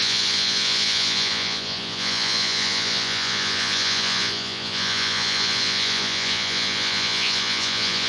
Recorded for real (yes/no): no